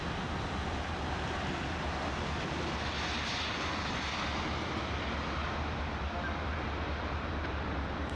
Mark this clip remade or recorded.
recorded